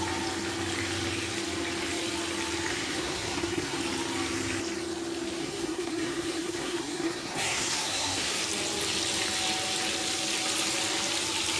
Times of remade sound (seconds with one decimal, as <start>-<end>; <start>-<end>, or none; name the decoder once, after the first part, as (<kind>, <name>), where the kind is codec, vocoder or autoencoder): 2.7-3.8 (codec, SNAC); 5.4-8.4